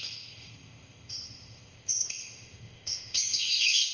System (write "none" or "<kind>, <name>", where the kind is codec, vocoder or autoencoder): codec, ZipCodec